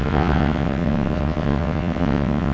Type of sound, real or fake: fake